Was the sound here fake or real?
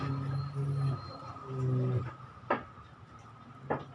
real